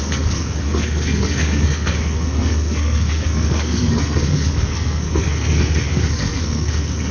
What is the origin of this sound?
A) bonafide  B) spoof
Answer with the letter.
B